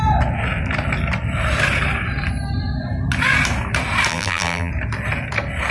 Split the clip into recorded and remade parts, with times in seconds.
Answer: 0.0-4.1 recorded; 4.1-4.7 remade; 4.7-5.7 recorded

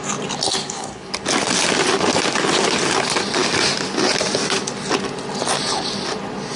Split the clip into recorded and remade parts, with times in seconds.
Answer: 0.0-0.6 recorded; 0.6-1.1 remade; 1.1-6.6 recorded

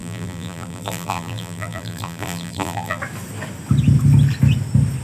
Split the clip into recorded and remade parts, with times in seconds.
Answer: 0.0-3.0 remade; 3.0-5.0 recorded

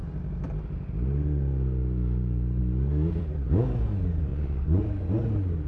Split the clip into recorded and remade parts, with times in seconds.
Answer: 0.0-4.3 recorded; 4.3-4.8 remade; 4.8-5.7 recorded

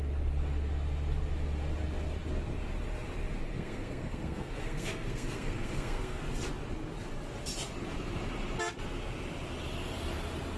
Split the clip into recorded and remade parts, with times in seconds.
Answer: 0.0-3.5 recorded; 3.5-6.2 remade; 6.2-10.6 recorded

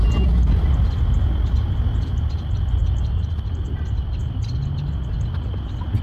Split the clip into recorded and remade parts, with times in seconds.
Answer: 0.0-6.0 recorded